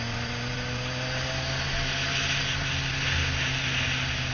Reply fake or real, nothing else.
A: real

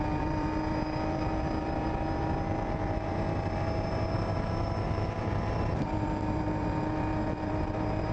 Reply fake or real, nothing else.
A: fake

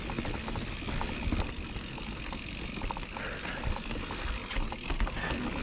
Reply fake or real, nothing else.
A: real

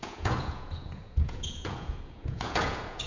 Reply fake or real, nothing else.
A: fake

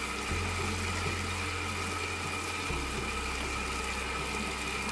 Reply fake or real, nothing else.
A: real